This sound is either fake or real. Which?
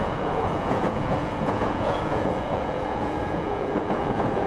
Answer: fake